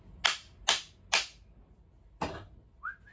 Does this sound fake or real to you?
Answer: real